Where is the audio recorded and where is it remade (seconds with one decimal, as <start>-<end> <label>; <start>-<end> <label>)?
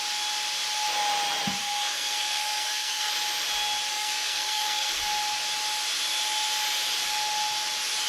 0.0-1.6 recorded; 1.6-3.1 remade; 3.1-3.9 recorded; 3.9-5.0 remade; 5.0-8.1 recorded